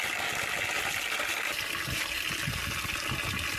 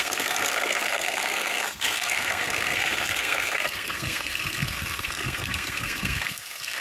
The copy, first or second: second